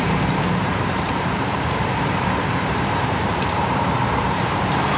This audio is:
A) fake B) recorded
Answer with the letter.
A